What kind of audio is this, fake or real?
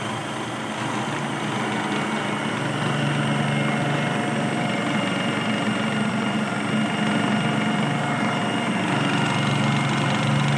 real